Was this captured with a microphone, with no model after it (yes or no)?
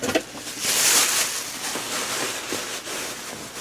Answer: yes